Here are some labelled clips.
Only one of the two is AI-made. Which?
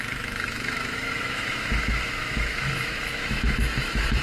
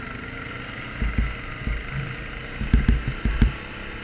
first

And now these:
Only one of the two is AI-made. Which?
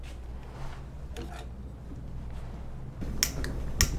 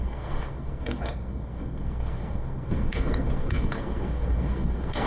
second